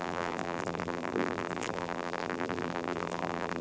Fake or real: fake